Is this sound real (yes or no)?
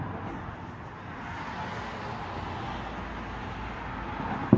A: yes